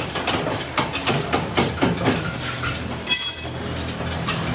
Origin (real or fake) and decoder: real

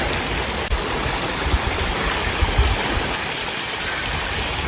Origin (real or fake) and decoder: real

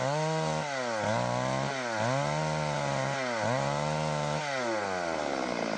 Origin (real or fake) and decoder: real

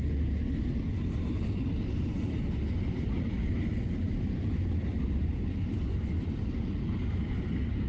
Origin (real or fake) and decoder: real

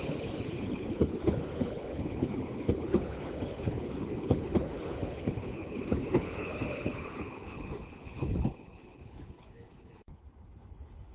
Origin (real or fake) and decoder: fake, codec, HILCodec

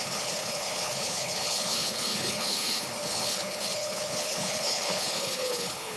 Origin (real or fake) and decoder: fake, codec, HILCodec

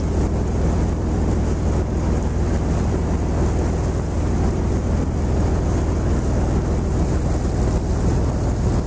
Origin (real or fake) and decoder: real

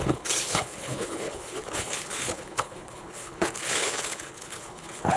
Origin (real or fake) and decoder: fake, codec, HILCodec